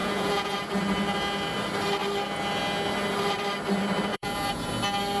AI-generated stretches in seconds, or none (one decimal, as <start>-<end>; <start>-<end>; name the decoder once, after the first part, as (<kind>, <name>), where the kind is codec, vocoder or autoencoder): 0.0-0.7 (vocoder, Vocos); 4.1-4.7